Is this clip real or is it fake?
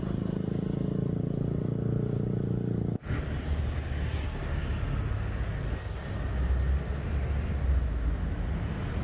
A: real